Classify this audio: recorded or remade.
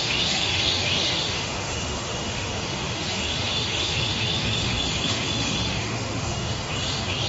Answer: remade